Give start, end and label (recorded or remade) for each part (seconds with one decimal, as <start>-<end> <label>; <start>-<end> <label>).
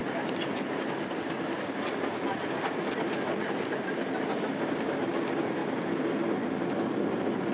0.0-7.5 recorded